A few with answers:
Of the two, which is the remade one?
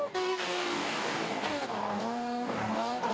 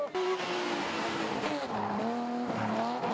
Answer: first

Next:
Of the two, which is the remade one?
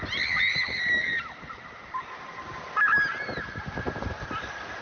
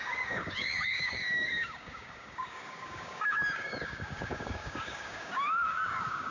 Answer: second